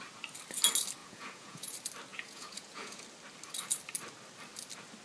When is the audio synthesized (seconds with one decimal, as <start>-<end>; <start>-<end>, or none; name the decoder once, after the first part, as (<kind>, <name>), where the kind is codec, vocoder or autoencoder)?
1.0-1.7 (vocoder, Vocos); 2.1-3.0